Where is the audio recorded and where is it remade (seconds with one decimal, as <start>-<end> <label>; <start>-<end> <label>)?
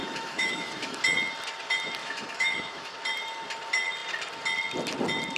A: 0.0-1.0 remade; 1.0-2.0 recorded; 2.0-2.9 remade; 2.9-5.4 recorded